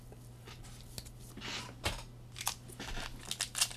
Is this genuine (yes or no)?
yes